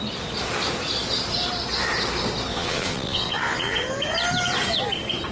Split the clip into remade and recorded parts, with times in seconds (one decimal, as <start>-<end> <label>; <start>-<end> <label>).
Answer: 0.0-2.5 recorded; 2.5-3.8 remade; 3.8-5.3 recorded